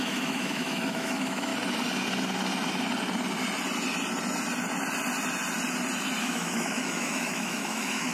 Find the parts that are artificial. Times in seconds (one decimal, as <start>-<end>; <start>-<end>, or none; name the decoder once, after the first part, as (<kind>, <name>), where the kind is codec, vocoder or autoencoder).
0.0-1.5 (autoencoder, DAC-VAE); 6.2-8.1